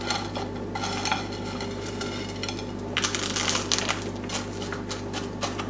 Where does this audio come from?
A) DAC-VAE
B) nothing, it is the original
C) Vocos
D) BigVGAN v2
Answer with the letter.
B